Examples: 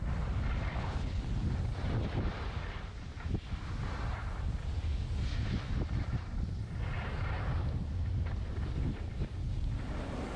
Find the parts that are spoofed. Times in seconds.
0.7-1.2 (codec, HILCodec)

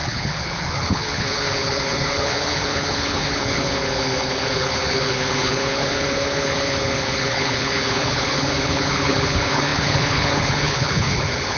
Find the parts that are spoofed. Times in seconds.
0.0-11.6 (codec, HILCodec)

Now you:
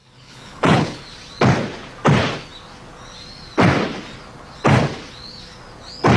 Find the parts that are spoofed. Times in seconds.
0.0-1.0 (codec, HILCodec)